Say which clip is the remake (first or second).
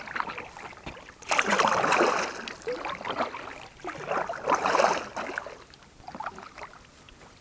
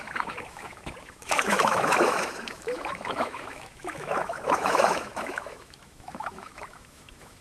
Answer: second